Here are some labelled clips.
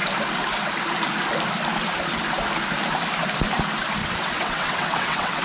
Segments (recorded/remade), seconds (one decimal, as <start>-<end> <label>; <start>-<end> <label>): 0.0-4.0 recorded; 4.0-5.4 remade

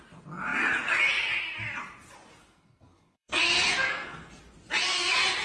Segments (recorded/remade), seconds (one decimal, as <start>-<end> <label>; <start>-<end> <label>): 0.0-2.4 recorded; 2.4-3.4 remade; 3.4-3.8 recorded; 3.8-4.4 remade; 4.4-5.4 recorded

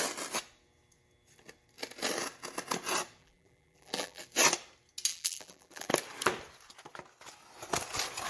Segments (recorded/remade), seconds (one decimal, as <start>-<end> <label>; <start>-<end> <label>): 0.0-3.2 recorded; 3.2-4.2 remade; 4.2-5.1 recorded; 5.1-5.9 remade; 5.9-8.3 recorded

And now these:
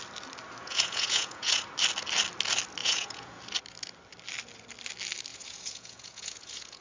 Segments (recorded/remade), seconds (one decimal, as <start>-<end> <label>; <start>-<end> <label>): 0.0-0.6 recorded; 0.6-1.6 remade; 1.6-2.8 recorded; 2.8-3.4 remade; 3.4-5.3 recorded; 5.3-6.8 remade